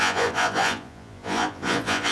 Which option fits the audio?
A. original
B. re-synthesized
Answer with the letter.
B